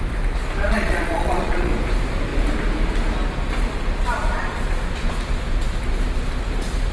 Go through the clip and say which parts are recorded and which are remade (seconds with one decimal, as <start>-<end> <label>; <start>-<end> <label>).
0.0-0.6 recorded; 0.6-1.7 remade; 1.7-6.9 recorded